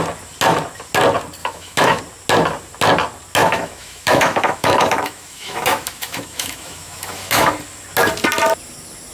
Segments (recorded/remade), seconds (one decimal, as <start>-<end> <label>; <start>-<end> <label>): 0.0-1.4 recorded; 1.4-2.0 remade; 2.0-3.4 recorded; 3.4-7.5 remade; 7.5-9.1 recorded